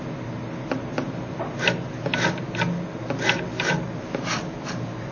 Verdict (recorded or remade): recorded